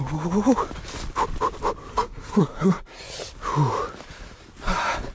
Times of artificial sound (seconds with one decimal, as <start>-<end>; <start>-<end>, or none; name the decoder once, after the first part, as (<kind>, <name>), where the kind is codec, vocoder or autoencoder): 1.9-2.8 (codec, SNAC)